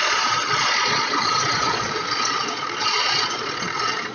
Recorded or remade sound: remade